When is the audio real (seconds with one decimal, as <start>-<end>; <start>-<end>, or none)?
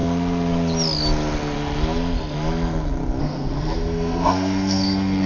0.0-3.2